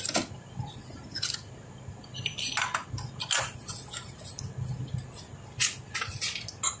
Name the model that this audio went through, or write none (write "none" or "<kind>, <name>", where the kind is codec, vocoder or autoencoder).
none